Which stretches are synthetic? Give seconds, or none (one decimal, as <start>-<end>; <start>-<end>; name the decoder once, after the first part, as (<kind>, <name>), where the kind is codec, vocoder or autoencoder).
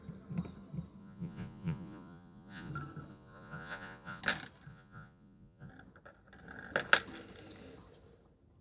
1.0-2.7 (vocoder, Vocos); 3.1-4.2; 4.7-5.7